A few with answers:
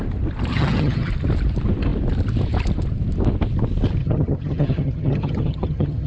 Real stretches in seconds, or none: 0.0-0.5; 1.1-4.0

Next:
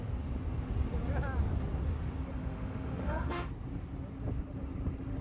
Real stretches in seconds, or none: 0.0-2.4; 3.5-5.2

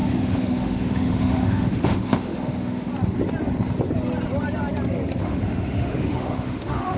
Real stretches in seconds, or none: 2.9-5.2

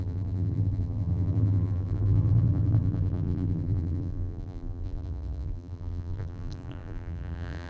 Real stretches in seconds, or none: none

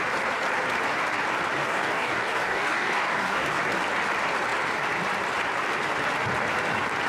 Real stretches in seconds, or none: 0.0-1.6; 3.6-7.1

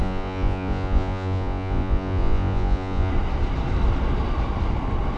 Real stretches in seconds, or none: 3.1-5.2

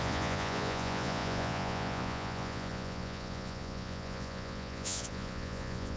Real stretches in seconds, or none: none

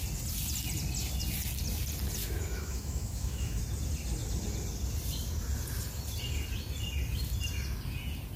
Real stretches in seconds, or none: 0.0-2.2; 3.6-8.4